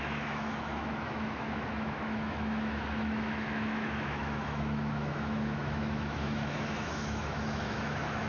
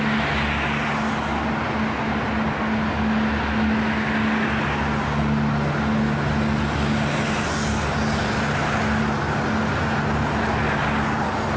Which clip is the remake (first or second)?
first